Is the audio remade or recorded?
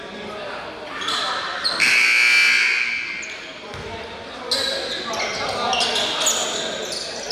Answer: recorded